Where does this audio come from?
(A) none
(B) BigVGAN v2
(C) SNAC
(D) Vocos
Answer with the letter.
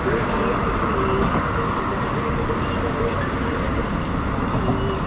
A